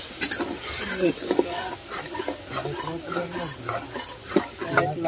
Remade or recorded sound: recorded